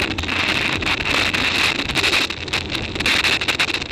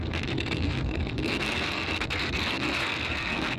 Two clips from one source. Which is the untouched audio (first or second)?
first